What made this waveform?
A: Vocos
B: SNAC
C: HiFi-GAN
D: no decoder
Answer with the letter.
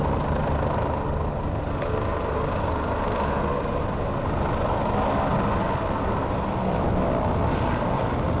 D